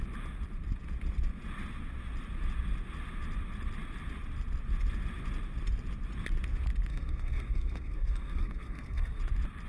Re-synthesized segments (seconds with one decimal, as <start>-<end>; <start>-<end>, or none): 6.9-9.2